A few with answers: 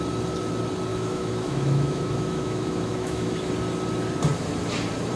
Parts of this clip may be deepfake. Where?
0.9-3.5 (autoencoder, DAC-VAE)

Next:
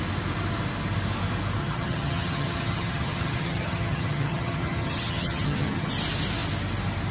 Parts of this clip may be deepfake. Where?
1.6-5.9 (vocoder, HiFi-GAN)

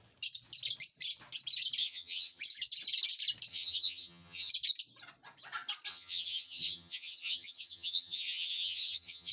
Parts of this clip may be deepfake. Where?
1.8-2.4 (vocoder, HiFi-GAN); 3.5-4.5; 5.9-9.3

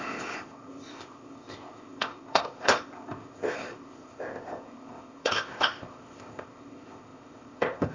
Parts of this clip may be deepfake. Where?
0.0-7.9 (codec, ZipCodec)

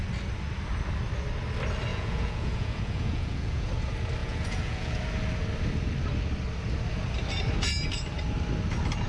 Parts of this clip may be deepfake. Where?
1.9-3.7 (vocoder, Vocos); 4.2-5.0

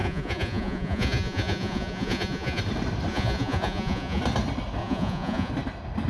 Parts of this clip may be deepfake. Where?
0.0-2.6 (vocoder, Vocos); 3.1-4.2; 4.8-5.5

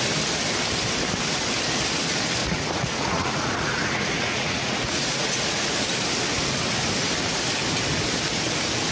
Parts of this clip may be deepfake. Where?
2.4-5.7 (vocoder, Vocos)